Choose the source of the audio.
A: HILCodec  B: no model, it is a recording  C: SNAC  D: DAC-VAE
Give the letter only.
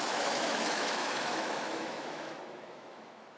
D